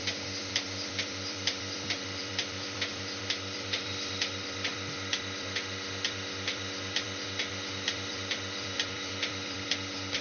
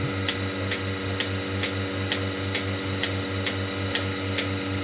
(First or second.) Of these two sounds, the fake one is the first